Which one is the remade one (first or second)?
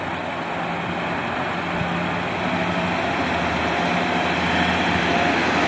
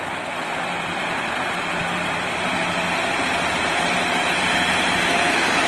second